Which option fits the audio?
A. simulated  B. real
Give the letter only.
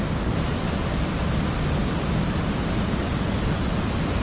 B